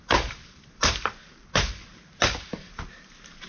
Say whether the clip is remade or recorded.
remade